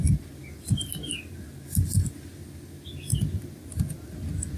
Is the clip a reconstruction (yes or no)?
no